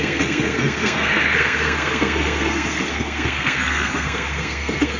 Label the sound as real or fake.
fake